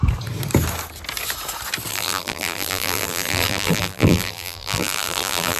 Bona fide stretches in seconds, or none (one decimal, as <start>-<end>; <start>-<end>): 0.0-1.9